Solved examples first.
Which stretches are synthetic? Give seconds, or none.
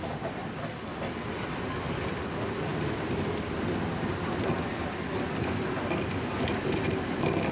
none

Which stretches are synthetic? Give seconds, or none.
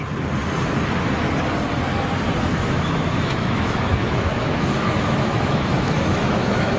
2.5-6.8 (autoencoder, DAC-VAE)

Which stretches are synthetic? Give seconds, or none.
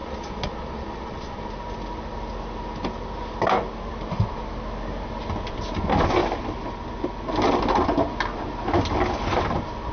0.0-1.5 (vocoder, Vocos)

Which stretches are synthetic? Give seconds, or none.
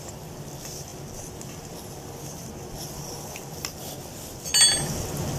none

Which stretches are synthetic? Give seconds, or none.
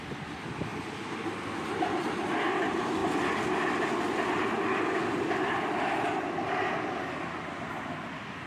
none